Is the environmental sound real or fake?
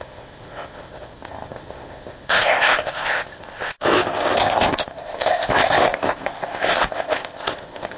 fake